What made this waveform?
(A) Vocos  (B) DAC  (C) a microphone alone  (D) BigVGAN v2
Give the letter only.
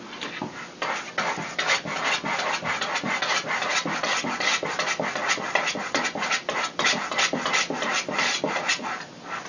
C